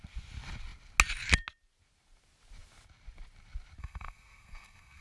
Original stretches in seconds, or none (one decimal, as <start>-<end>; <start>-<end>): 0.0-3.8